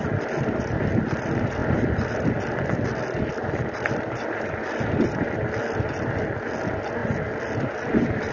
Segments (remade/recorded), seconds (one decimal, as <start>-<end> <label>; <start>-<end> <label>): 0.0-8.3 recorded